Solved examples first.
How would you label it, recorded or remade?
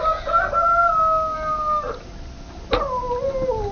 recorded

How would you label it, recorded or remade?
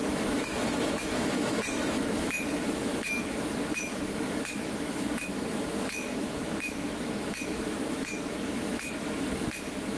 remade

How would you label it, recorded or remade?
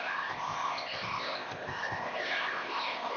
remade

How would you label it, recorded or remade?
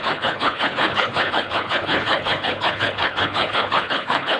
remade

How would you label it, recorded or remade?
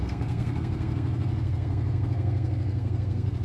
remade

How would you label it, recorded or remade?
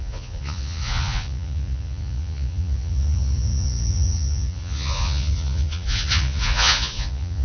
remade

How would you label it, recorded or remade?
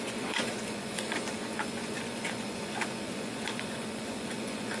remade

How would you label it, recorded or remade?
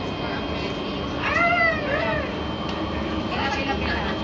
recorded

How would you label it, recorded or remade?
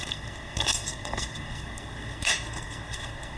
remade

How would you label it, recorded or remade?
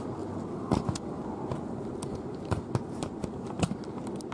recorded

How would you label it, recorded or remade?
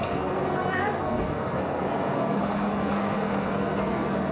remade